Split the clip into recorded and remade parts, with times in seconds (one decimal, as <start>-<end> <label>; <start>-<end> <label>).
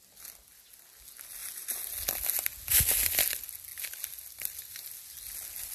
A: 0.0-5.7 recorded